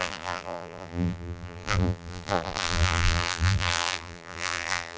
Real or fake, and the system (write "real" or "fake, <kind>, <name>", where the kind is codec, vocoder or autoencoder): fake, vocoder, BigVGAN v2